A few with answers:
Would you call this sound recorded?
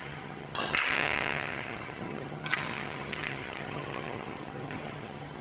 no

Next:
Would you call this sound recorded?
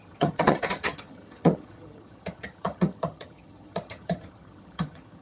no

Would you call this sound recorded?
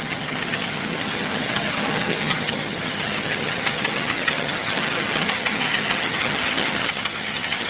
no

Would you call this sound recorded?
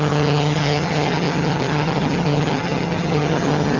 no